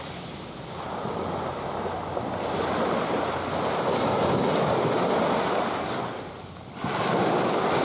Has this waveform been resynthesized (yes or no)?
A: no